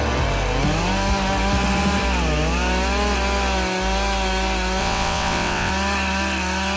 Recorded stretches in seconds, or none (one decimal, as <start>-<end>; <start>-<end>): 0.0-4.8; 5.7-6.8